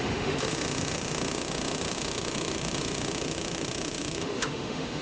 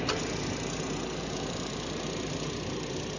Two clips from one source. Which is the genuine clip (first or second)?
second